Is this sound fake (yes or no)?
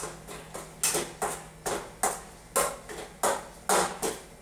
no